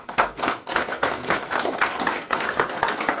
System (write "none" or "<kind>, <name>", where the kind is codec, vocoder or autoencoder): codec, SNAC